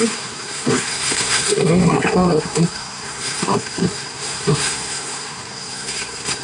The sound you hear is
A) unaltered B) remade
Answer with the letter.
B